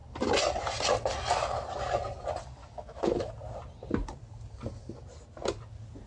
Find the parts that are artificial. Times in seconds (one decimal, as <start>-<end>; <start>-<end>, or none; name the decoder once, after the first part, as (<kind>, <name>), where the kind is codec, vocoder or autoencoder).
2.6-3.3 (autoencoder, DAC-VAE)

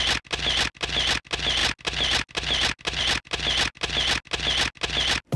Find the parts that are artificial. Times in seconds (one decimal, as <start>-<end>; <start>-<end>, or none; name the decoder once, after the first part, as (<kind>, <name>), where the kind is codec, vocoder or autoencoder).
none

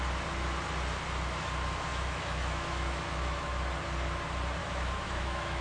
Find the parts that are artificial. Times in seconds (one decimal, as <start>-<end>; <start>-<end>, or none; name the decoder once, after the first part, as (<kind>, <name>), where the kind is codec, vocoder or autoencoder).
1.9-3.5 (autoencoder, DAC-VAE); 4.6-5.6